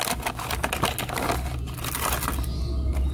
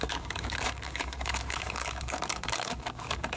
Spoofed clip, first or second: second